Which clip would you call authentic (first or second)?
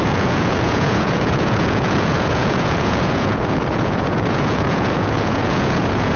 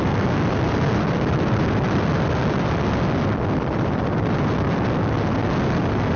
second